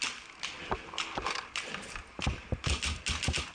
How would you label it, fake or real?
real